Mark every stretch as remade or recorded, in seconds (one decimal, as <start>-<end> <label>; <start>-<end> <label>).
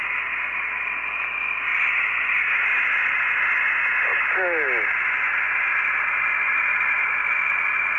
0.0-8.0 recorded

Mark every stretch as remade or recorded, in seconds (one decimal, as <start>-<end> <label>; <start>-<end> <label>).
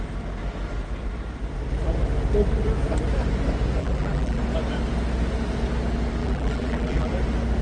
0.0-3.8 recorded; 3.8-4.4 remade; 4.4-6.2 recorded; 6.2-7.1 remade; 7.1-7.6 recorded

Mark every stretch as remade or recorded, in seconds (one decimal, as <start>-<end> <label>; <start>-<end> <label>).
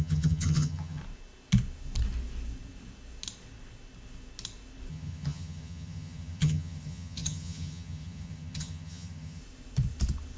0.0-1.0 remade; 1.0-4.9 recorded; 4.9-9.4 remade; 9.4-10.4 recorded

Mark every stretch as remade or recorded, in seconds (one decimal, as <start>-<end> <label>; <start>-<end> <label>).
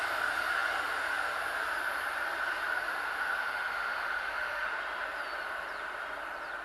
0.0-3.4 recorded; 3.4-4.7 remade; 4.7-6.6 recorded